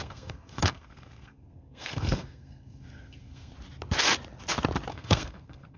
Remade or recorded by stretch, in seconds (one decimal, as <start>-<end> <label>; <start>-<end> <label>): 0.0-3.5 remade; 3.5-4.9 recorded; 4.9-5.8 remade